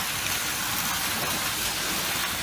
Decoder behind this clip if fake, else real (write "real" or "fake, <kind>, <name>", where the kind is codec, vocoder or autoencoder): real